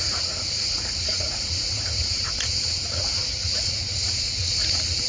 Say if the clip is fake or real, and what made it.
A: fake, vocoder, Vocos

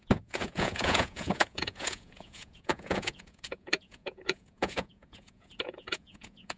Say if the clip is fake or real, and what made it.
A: fake, vocoder, Vocos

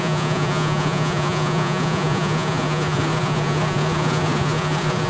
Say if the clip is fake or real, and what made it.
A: fake, vocoder, Vocos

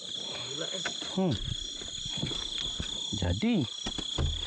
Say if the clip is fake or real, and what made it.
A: real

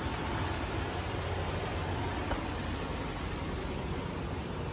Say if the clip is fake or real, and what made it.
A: real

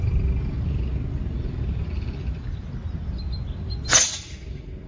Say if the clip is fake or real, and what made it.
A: real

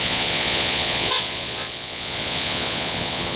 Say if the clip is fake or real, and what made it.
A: fake, vocoder, Vocos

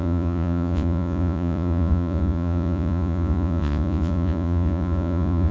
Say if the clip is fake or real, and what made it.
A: fake, vocoder, Vocos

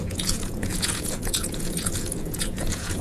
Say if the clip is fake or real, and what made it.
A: fake, vocoder, Vocos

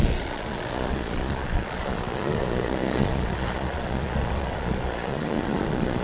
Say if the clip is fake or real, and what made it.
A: fake, vocoder, Vocos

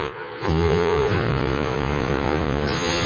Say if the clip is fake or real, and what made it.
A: fake, vocoder, Vocos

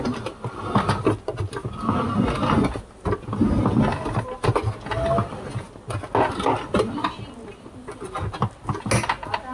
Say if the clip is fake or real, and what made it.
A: real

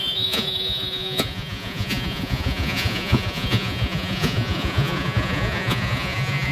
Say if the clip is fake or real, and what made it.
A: fake, vocoder, Vocos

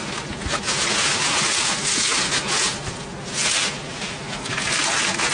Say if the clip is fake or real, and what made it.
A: real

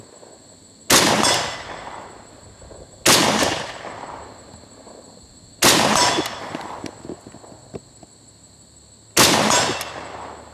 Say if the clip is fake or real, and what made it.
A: real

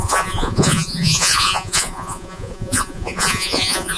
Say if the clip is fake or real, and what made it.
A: fake, vocoder, Vocos